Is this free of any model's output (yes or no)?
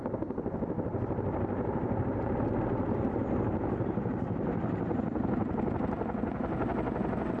yes